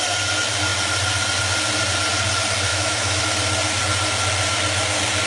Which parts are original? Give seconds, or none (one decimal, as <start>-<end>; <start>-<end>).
0.0-2.7; 3.2-5.3